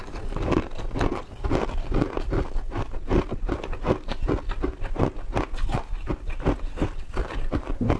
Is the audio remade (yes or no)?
no